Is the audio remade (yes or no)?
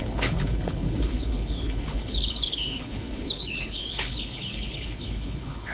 yes